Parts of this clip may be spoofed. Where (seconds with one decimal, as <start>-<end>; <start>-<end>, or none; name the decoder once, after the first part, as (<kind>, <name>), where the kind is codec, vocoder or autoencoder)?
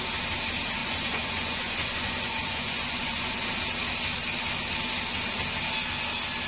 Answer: 0.8-3.5 (vocoder, Vocos)